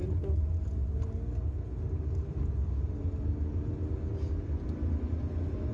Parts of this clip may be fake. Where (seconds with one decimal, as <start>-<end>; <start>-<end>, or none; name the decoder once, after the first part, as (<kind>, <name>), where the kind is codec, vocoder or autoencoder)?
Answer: none